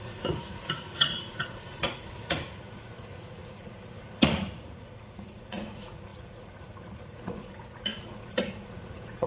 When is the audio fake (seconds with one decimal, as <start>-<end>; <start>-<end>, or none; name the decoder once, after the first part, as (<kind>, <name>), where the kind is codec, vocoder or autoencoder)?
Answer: 0.0-9.3 (vocoder, Vocos)